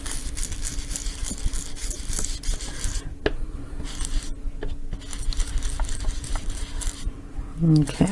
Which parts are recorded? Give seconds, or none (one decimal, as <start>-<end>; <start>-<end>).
0.0-1.2; 2.7-8.1